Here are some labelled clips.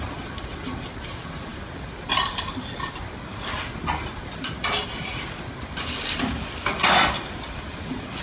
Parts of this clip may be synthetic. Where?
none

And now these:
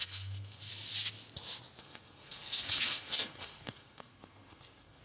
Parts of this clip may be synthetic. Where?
0.0-0.7; 1.8-5.0

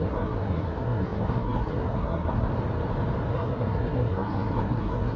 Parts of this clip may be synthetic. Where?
0.0-2.5; 3.3-5.2

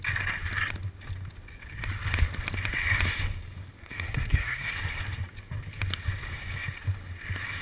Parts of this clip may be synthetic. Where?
3.8-4.7